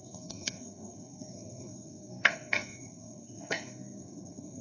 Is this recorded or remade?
remade